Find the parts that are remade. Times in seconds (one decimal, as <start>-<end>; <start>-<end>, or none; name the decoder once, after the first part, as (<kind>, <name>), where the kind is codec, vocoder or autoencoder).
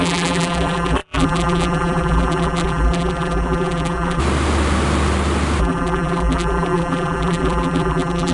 0.0-4.2 (vocoder, BigVGAN v2); 5.6-8.3